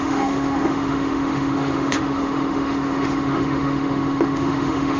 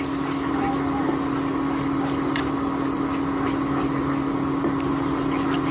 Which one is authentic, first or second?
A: second